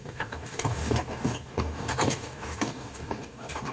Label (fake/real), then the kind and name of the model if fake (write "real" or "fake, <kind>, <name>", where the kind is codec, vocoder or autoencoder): fake, codec, DAC